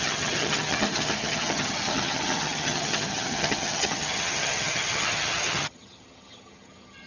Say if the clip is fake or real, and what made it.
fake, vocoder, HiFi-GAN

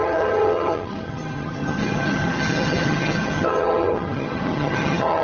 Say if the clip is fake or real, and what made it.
fake, vocoder, HiFi-GAN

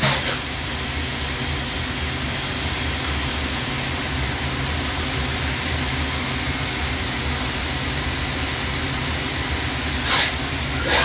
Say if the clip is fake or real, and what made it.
real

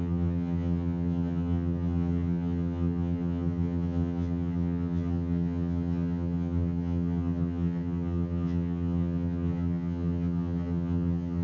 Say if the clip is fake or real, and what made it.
fake, vocoder, HiFi-GAN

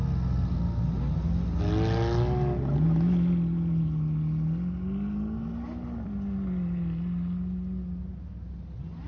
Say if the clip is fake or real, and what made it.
real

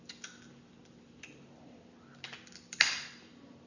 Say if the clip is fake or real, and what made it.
real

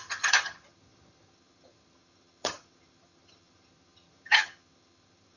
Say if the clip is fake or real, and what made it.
fake, vocoder, HiFi-GAN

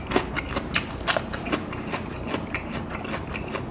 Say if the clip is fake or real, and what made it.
real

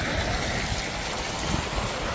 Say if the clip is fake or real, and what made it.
real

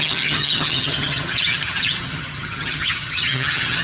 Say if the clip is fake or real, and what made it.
fake, vocoder, HiFi-GAN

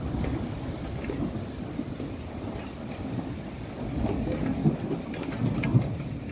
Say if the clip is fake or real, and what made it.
real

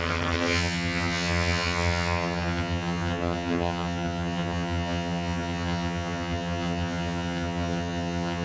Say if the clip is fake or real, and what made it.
fake, vocoder, HiFi-GAN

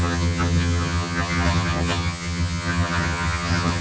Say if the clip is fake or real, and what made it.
fake, vocoder, HiFi-GAN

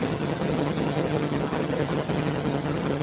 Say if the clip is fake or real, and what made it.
fake, vocoder, HiFi-GAN